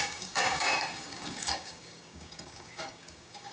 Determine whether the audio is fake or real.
fake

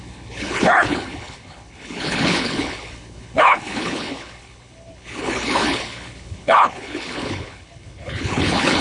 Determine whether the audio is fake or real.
fake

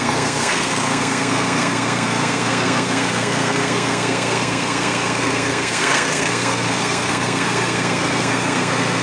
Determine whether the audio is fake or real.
fake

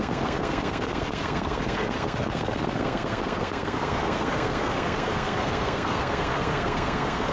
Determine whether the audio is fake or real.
fake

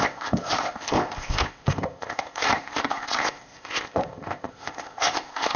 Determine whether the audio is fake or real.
fake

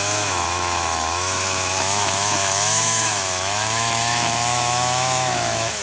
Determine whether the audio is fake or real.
fake